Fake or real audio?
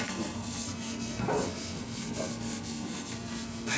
fake